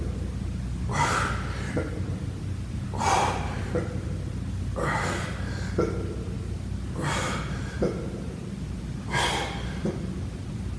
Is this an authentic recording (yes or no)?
yes